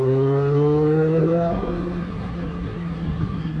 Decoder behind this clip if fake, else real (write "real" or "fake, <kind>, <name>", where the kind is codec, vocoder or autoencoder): fake, codec, SNAC